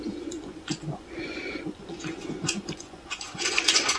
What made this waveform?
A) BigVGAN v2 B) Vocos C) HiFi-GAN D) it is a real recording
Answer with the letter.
B